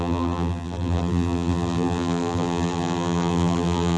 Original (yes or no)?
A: no